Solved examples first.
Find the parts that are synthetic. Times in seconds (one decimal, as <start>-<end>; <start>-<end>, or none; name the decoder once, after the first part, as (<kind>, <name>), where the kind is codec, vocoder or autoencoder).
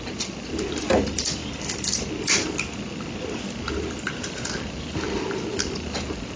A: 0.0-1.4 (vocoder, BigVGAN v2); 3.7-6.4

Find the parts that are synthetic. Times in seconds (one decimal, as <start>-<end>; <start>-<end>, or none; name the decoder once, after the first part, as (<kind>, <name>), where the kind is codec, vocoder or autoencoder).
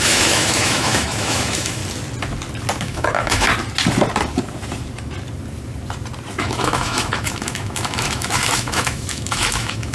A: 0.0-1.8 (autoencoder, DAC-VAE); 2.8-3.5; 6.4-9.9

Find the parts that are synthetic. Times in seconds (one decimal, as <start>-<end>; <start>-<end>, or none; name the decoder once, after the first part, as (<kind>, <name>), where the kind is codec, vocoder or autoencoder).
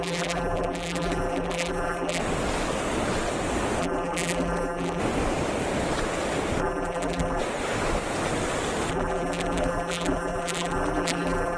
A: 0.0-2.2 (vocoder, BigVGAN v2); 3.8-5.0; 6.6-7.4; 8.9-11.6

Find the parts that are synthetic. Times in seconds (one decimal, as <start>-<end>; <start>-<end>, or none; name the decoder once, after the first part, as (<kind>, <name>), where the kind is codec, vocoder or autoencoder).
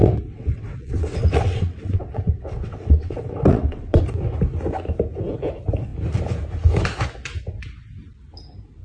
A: 0.0-4.0 (vocoder, WaveNeXt)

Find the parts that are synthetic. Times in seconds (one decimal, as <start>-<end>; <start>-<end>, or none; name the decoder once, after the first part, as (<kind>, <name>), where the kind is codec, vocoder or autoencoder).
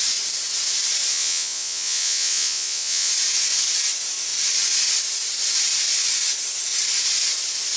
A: 1.1-3.1 (vocoder, Vocos)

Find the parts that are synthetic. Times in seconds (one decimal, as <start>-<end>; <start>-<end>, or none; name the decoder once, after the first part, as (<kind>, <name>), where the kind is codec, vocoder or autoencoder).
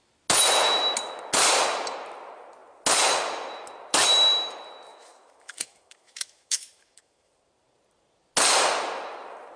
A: 4.9-7.3 (autoencoder, DAC-VAE)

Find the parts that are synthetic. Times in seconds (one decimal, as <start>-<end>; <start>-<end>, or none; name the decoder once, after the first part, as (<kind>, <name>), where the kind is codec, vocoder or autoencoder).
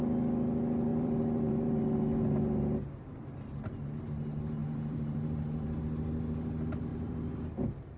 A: 0.9-1.8 (vocoder, BigVGAN v2); 4.6-5.8; 6.9-8.0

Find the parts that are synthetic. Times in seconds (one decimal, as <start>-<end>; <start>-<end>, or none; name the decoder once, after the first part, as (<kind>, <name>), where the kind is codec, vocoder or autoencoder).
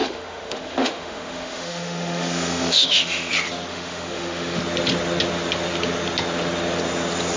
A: 0.0-3.3 (autoencoder, DAC-VAE); 3.7-4.6